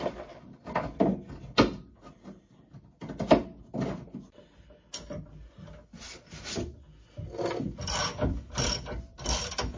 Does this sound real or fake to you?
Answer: real